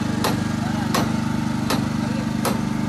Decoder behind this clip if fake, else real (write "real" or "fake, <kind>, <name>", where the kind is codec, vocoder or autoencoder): real